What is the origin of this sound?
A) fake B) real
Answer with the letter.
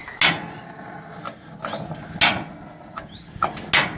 B